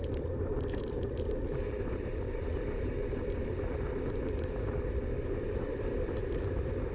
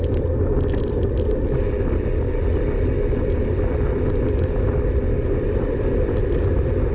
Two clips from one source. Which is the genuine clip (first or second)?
second